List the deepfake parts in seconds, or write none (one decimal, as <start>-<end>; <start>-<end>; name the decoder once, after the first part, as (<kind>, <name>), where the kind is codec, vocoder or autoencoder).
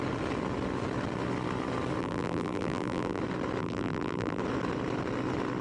2.0-3.2 (vocoder, BigVGAN v2); 3.6-4.4